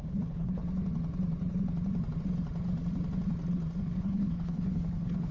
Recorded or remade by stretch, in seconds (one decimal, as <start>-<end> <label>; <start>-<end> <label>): 0.0-0.6 remade; 0.6-3.8 recorded; 3.8-5.3 remade